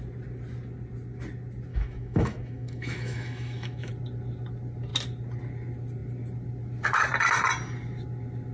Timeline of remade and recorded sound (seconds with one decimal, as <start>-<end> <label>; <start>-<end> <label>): 0.0-1.7 recorded; 1.7-3.9 remade; 3.9-8.5 recorded